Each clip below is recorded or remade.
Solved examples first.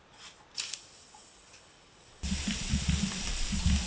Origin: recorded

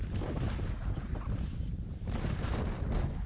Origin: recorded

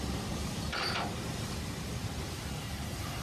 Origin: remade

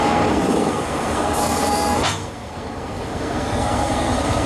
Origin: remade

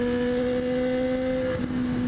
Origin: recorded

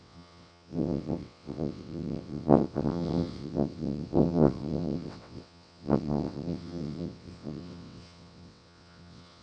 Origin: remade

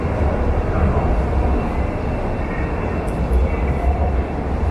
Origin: recorded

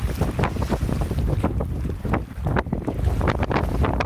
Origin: recorded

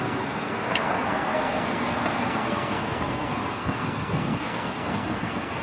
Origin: remade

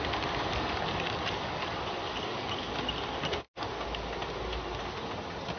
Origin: recorded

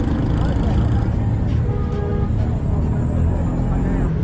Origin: recorded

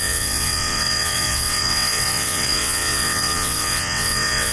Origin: remade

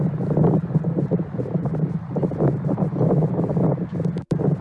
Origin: recorded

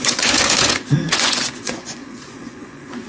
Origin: remade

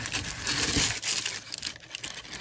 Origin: recorded